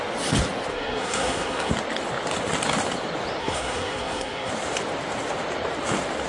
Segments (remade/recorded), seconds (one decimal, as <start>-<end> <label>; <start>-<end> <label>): 0.0-0.7 recorded; 0.7-1.7 remade; 1.7-3.4 recorded; 3.4-4.5 remade; 4.5-6.3 recorded